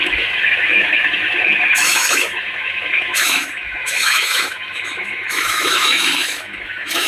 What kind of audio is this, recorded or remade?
remade